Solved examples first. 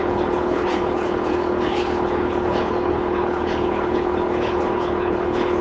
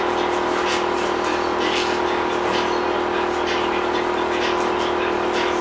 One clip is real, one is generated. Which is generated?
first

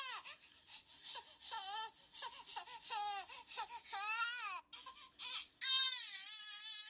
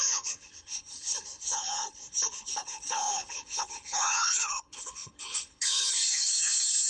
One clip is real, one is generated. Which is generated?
second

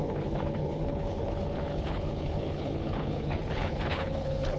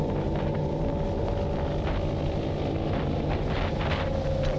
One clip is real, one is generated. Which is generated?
first